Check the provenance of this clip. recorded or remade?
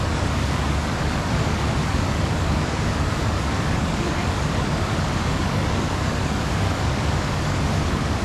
remade